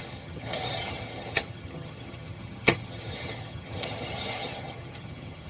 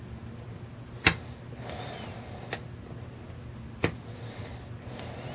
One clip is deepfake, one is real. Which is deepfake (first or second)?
first